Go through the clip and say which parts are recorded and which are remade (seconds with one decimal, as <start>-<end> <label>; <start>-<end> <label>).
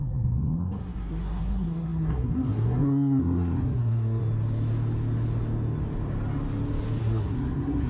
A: 0.0-4.2 remade; 4.2-7.0 recorded; 7.0-7.9 remade